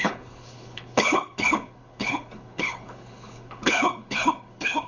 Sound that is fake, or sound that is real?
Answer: fake